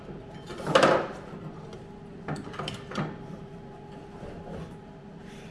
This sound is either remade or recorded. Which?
recorded